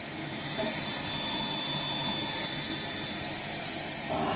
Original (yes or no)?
yes